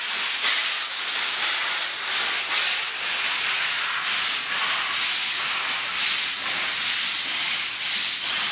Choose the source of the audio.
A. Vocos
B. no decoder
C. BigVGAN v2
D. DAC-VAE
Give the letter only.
B